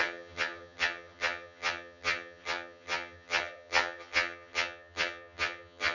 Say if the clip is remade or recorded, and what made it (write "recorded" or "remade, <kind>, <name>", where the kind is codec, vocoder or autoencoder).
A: remade, vocoder, HiFi-GAN